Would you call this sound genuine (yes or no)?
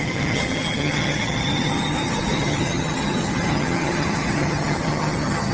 no